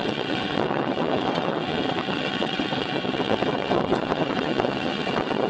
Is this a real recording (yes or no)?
no